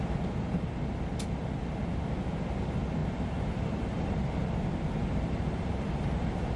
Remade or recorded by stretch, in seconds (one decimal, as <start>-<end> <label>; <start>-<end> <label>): 0.0-3.0 recorded; 3.0-4.2 remade; 4.2-5.0 recorded; 5.0-6.0 remade; 6.0-6.6 recorded